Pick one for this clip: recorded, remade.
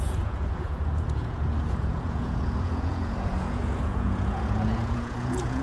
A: remade